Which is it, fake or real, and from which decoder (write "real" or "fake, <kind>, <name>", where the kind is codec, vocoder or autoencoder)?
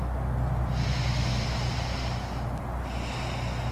real